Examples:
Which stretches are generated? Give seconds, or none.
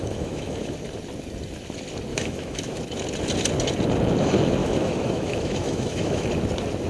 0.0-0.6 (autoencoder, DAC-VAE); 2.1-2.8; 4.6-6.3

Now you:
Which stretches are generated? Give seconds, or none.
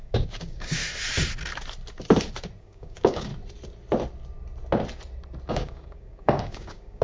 0.0-0.8 (codec, DAC); 2.6-3.3; 5.5-7.0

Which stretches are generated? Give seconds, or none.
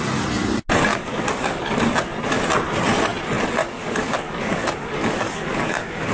0.9-1.8 (codec, DAC); 3.6-6.1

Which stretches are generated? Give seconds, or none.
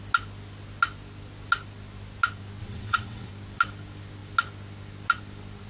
2.6-3.3 (vocoder, WaveNeXt)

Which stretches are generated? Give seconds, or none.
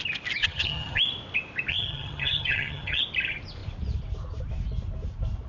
0.4-1.0 (vocoder, HiFi-GAN); 1.7-3.0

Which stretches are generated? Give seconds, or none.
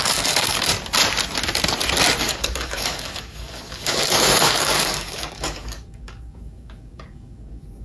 0.0-0.7 (codec, DAC); 2.2-7.8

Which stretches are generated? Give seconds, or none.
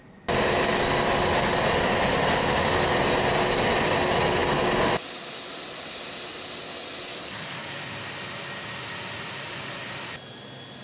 7.1-7.8 (codec, DAC)